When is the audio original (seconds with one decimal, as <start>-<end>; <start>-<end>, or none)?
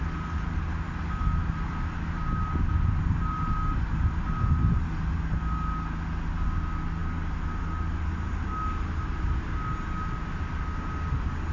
0.0-11.5